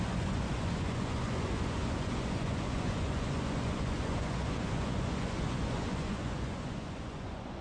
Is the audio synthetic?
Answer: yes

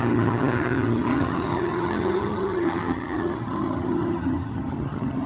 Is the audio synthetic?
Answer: yes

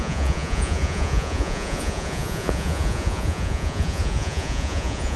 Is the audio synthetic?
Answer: yes